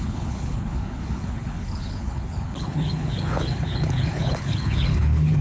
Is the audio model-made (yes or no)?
yes